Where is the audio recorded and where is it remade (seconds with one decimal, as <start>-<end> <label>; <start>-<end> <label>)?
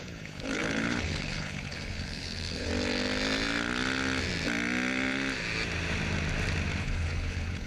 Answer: 0.0-2.7 remade; 2.7-6.8 recorded; 6.8-7.7 remade